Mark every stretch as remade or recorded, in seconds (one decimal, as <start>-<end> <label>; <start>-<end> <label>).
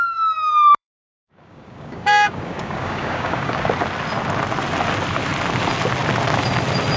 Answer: 0.0-0.7 recorded; 0.7-3.6 remade; 3.6-7.0 recorded